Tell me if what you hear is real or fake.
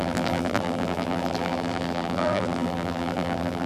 fake